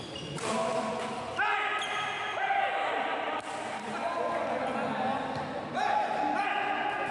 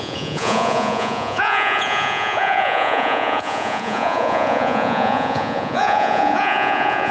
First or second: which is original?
first